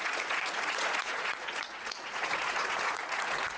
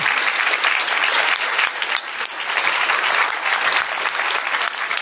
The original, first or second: second